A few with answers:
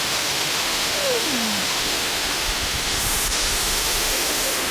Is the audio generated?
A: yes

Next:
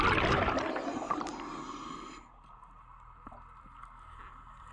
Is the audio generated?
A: no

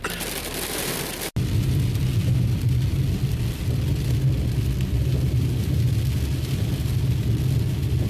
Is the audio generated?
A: no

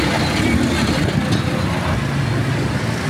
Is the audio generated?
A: no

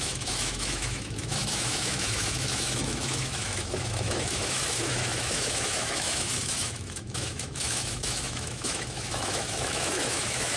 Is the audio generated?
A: yes